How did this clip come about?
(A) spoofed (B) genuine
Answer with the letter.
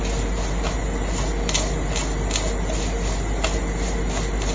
B